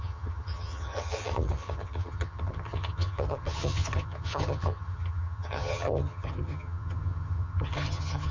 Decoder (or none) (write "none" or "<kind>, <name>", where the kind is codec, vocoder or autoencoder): vocoder, HiFi-GAN